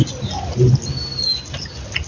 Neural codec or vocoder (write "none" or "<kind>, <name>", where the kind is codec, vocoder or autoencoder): none